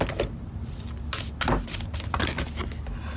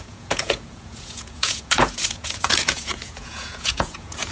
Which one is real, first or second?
first